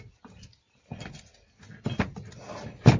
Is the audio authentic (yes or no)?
yes